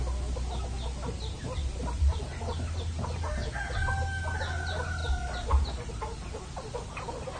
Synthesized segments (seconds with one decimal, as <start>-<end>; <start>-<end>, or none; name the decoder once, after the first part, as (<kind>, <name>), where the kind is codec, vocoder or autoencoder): none

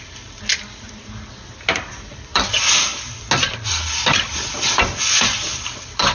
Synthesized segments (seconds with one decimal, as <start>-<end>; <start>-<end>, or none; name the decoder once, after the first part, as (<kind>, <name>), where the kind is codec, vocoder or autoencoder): none

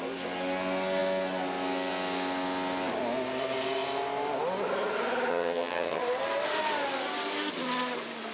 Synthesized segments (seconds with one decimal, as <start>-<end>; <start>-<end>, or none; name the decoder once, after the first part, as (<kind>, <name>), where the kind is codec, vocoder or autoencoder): 5.3-6.0 (vocoder, HiFi-GAN)